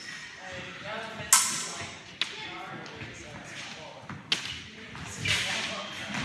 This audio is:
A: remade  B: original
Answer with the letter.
B